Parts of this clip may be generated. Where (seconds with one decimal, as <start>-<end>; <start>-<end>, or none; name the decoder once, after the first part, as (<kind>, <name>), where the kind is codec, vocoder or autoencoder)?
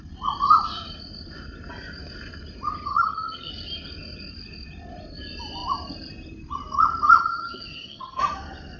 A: 2.9-3.5 (vocoder, HiFi-GAN); 7.2-8.2